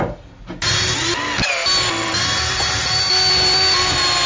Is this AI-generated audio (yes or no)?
no